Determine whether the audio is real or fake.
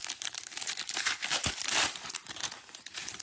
fake